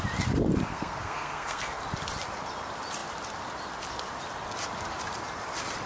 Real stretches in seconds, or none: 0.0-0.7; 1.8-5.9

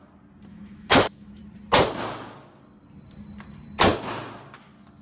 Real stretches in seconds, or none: 0.0-0.5; 1.4-5.0

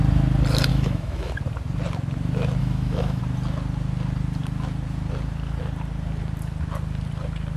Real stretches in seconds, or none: 0.0-0.7; 1.3-2.6; 3.2-7.6

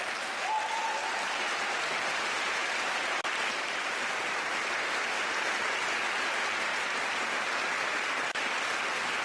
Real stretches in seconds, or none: 0.0-1.0; 5.0-6.7; 8.0-9.2